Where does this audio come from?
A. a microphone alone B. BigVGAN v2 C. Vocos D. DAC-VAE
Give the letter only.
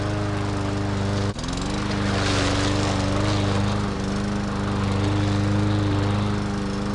A